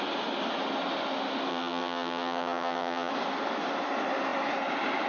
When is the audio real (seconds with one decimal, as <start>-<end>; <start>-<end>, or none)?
0.0-1.5; 3.1-5.1